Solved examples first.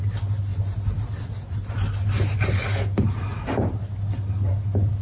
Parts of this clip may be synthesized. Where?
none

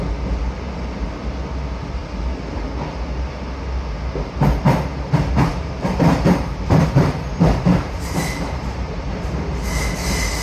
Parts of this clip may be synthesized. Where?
5.5-9.3 (vocoder, BigVGAN v2)

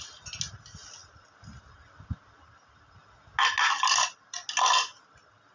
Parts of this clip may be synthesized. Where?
none

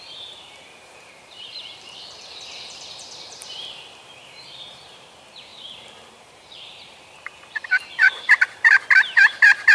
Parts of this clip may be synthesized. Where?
0.0-9.7 (vocoder, BigVGAN v2)

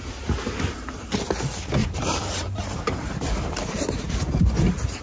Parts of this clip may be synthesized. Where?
1.8-4.4 (vocoder, BigVGAN v2)